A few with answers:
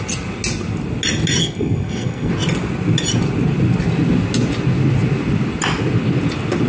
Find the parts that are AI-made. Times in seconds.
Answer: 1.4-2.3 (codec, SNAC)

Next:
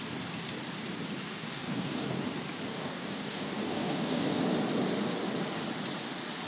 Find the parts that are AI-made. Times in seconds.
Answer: 1.3-2.2 (codec, DAC); 2.7-4.4

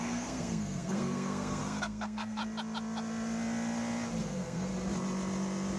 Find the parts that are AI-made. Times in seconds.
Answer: 0.0-2.4 (codec, SNAC); 4.2-4.7

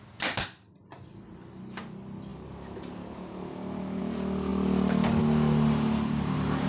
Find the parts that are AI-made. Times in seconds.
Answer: none

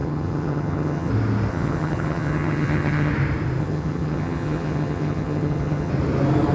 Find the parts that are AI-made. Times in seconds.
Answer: 0.0-1.1 (vocoder, HiFi-GAN); 1.5-3.1; 3.6-5.9